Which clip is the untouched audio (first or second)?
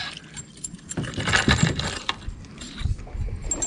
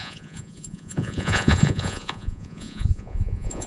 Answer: first